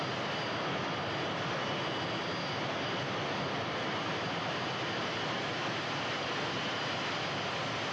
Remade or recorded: recorded